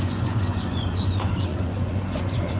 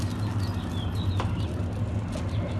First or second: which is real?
second